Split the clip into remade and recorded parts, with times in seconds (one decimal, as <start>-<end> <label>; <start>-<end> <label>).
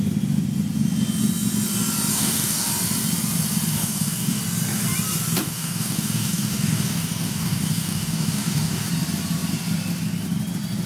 0.0-2.1 recorded; 2.1-2.7 remade; 2.7-3.7 recorded; 3.7-4.4 remade; 4.4-5.4 recorded; 5.4-8.9 remade; 8.9-10.9 recorded